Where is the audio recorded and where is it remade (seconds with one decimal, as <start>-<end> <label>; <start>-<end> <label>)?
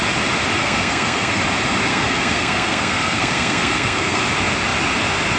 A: 0.0-0.6 recorded; 0.6-1.4 remade; 1.4-1.9 recorded; 1.9-4.2 remade; 4.2-5.4 recorded